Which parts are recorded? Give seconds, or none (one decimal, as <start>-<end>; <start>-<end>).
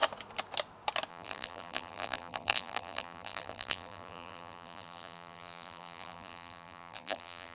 0.0-1.1